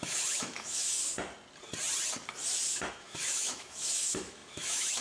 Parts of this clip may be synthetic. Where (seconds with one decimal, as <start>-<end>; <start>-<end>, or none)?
0.0-1.0; 2.9-5.0